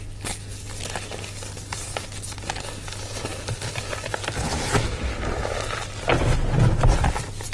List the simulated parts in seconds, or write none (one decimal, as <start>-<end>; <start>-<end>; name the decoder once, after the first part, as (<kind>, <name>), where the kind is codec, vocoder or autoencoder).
none